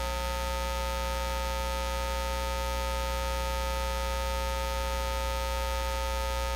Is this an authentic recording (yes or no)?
yes